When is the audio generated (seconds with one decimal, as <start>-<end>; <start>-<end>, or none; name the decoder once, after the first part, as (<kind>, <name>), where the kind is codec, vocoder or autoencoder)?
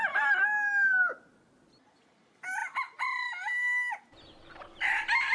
2.6-3.9 (vocoder, BigVGAN v2)